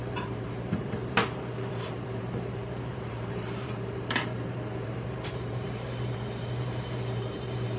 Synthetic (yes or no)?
yes